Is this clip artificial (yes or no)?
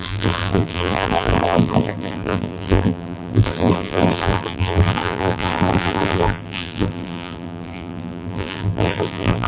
yes